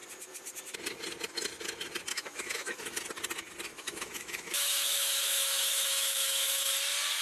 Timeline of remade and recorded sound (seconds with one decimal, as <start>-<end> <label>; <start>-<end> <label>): 0.0-2.1 recorded; 2.1-3.0 remade; 3.0-3.7 recorded; 3.7-6.7 remade; 6.7-7.2 recorded